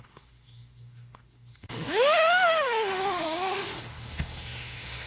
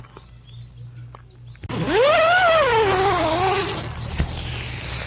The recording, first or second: second